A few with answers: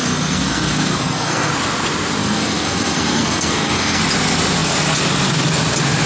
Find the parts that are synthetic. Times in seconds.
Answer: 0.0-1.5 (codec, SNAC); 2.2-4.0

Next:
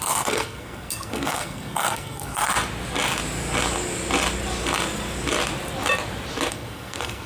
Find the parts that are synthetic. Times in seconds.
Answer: 0.0-2.5 (codec, SNAC); 6.5-7.3

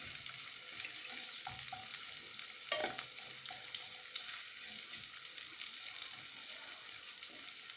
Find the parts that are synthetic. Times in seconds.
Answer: none

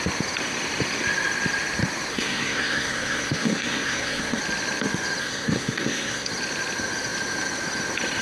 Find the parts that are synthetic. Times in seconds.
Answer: 2.1-4.4 (codec, SNAC); 5.2-6.3

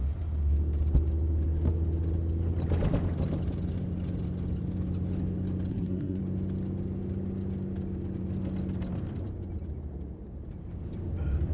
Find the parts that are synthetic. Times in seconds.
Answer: 5.7-6.2 (codec, SNAC)

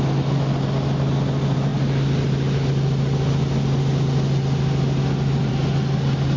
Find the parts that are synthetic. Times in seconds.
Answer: none